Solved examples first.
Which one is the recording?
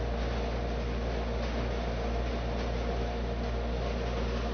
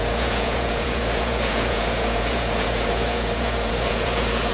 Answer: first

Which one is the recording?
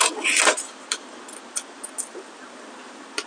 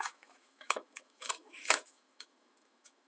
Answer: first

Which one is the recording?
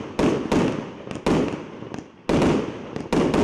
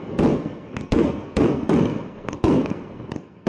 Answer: first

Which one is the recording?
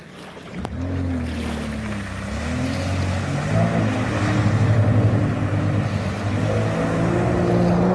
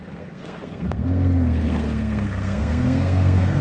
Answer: first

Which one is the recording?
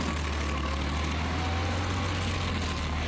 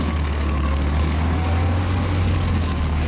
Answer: first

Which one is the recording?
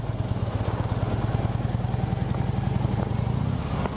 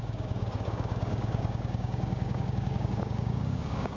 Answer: first